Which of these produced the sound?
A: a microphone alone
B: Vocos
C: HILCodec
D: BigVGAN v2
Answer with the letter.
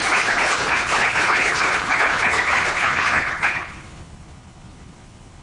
C